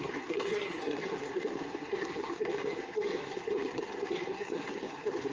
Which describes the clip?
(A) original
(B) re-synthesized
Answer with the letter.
B